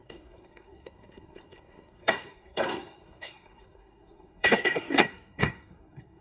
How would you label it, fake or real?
fake